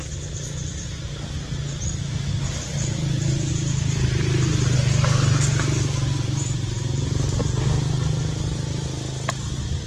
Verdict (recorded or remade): recorded